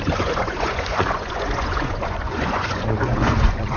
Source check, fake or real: fake